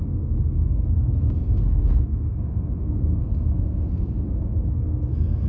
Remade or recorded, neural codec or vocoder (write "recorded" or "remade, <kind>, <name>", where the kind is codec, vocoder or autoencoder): remade, codec, SNAC